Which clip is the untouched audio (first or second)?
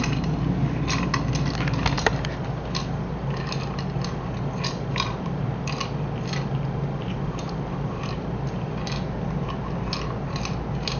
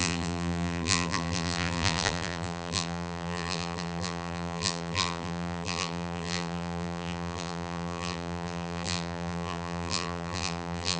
first